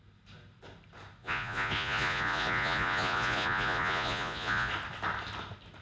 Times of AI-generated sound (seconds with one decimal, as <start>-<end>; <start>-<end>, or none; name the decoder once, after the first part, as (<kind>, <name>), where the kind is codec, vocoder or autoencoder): 1.2-4.7 (vocoder, Vocos)